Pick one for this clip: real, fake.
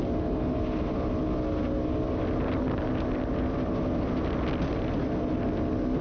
real